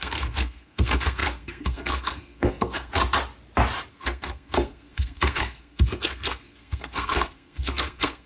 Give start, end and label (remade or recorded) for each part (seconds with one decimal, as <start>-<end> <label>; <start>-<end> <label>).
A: 0.0-2.9 remade; 2.9-3.9 recorded; 3.9-8.3 remade